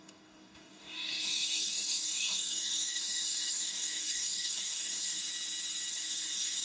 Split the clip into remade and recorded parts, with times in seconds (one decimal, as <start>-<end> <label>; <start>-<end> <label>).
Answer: 0.0-5.2 remade; 5.2-5.9 recorded; 5.9-6.6 remade

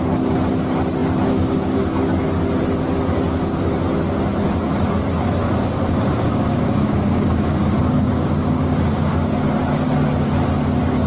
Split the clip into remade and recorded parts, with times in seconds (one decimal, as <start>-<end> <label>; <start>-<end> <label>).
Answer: 0.0-5.4 recorded; 5.4-9.4 remade; 9.4-11.1 recorded

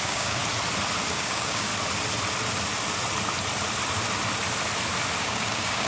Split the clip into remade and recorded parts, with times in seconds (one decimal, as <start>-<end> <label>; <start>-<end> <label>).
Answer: 0.0-0.4 remade; 0.4-1.1 recorded; 1.1-1.7 remade; 1.7-5.2 recorded; 5.2-5.9 remade